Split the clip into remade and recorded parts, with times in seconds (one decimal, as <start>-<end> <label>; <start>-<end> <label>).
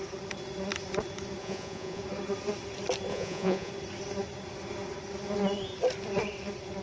0.0-1.4 recorded; 1.4-2.0 remade; 2.0-3.1 recorded; 3.1-3.7 remade; 3.7-6.8 recorded